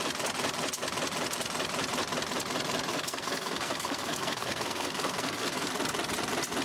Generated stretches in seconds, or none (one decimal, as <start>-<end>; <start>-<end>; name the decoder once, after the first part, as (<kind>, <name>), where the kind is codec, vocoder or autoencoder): 2.9-5.7 (codec, SNAC)